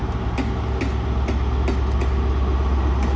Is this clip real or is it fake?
real